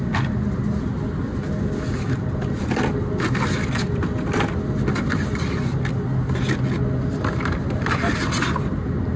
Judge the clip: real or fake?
real